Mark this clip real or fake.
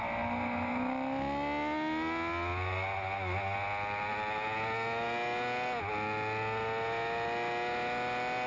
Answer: real